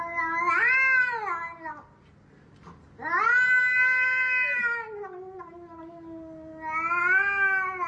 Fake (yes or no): no